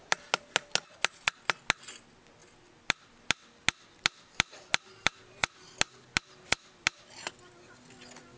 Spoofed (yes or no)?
no